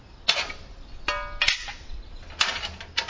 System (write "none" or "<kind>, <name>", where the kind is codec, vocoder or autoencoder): none